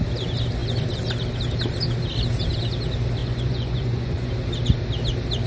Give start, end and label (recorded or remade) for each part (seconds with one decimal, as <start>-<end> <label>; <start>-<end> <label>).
0.0-3.2 recorded; 3.2-4.3 remade; 4.3-5.5 recorded